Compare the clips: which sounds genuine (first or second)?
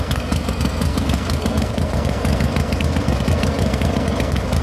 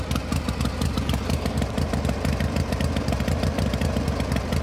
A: second